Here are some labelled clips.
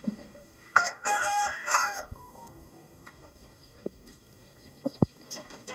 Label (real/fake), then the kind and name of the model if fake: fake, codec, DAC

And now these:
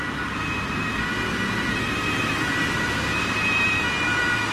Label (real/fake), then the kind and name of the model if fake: real